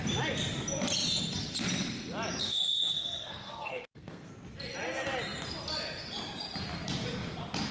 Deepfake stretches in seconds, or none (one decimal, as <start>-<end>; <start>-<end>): 2.4-4.3